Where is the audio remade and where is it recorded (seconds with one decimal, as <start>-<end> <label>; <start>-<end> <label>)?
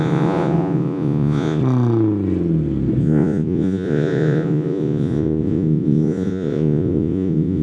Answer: 0.0-1.6 remade; 1.6-3.0 recorded; 3.0-7.6 remade